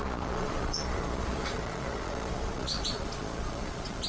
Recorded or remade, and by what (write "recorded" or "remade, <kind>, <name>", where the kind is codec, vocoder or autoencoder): remade, vocoder, Vocos